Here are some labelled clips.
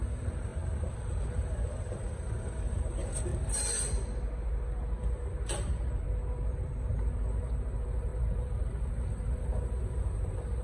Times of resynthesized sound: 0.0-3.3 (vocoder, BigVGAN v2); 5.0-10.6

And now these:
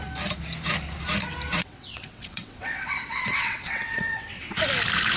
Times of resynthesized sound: 1.5-4.6 (vocoder, WaveNeXt)

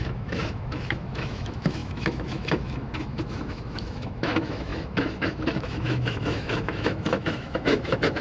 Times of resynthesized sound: 0.0-8.2 (autoencoder, DAC-VAE)

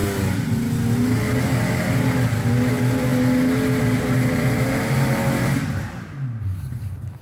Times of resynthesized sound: 2.7-3.1 (vocoder, BigVGAN v2); 3.8-5.2; 5.8-7.2

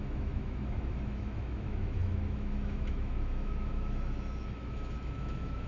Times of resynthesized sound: 0.0-5.7 (autoencoder, DAC-VAE)